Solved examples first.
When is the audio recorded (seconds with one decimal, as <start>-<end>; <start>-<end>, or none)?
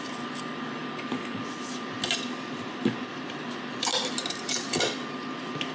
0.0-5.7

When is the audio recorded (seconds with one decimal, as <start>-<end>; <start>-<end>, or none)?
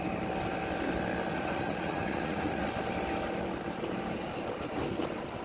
0.0-1.3; 2.7-5.4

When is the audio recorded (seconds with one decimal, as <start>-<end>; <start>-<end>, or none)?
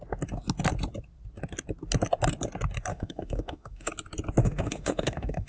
0.0-2.9; 3.9-4.4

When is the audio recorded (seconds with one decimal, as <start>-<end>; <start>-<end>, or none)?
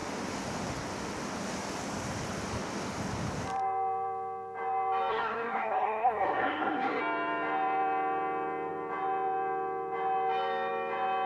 0.0-5.1; 7.0-11.3